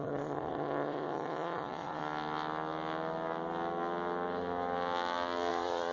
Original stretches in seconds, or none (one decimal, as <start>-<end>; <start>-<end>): 2.0-5.5